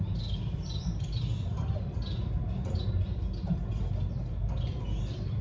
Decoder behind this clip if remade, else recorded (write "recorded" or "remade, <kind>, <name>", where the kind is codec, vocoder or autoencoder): recorded